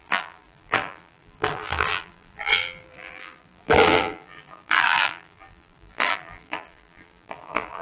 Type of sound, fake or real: fake